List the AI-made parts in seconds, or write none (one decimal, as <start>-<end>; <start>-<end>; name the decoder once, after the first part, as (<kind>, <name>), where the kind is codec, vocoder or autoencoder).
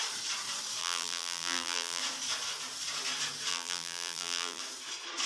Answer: 0.8-2.0 (vocoder, BigVGAN v2); 3.5-4.6